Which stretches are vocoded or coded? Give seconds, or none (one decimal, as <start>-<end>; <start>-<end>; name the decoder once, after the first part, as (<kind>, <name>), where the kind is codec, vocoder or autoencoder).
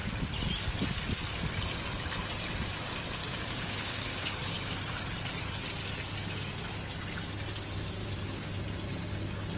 3.2-4.9 (codec, DAC); 8.0-8.5